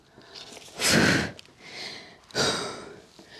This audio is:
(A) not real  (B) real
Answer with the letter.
B